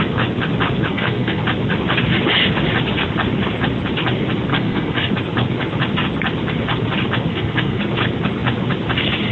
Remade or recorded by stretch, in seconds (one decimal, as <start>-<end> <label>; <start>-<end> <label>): 0.0-0.9 recorded; 0.9-1.4 remade; 1.4-4.5 recorded; 4.5-5.1 remade; 5.1-7.3 recorded; 7.3-7.8 remade; 7.8-9.3 recorded